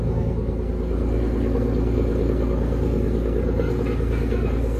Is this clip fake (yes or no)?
yes